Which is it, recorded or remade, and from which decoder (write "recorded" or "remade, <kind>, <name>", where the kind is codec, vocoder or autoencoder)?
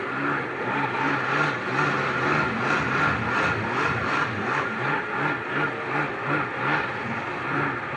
recorded